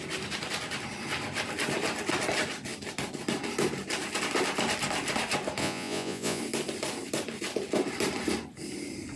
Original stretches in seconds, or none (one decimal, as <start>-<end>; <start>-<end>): 0.0-5.6; 6.4-9.2